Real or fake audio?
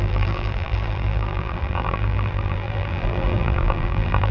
fake